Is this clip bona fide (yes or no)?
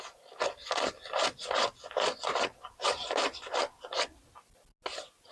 yes